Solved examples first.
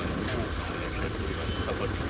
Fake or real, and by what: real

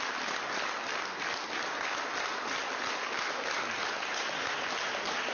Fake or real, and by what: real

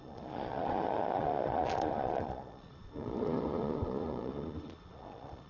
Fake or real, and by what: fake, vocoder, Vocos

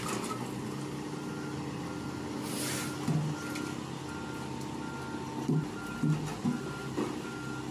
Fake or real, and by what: real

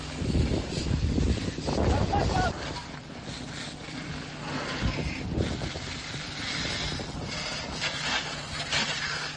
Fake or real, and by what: real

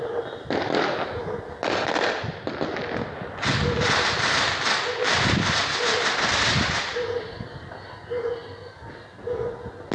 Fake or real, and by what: real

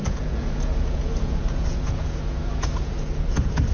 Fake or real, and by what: fake, vocoder, Vocos